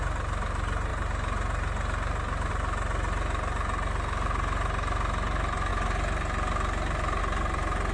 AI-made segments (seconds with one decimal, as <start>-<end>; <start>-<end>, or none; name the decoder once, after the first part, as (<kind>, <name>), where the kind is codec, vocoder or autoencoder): none

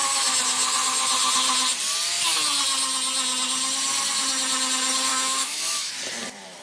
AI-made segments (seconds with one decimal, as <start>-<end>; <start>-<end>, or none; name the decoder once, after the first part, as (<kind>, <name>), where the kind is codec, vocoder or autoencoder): 5.1-5.9 (autoencoder, DAC-VAE)

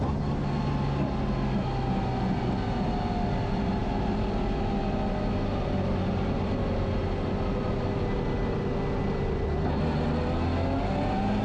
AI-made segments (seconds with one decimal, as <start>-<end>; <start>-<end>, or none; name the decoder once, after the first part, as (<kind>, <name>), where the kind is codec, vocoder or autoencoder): none

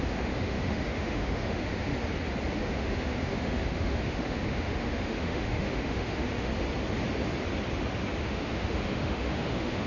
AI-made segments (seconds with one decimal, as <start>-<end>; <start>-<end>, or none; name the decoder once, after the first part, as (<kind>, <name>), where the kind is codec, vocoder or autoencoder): 0.0-1.9 (autoencoder, DAC-VAE); 2.5-6.5; 8.2-9.9

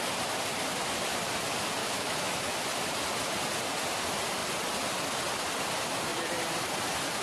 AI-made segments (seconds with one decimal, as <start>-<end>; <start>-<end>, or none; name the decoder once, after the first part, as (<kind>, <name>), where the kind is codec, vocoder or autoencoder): 1.8-2.3 (autoencoder, DAC-VAE)

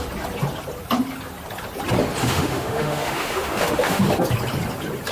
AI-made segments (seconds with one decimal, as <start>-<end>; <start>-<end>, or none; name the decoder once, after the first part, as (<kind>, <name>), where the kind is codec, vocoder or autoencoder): 2.2-4.0 (autoencoder, DAC-VAE)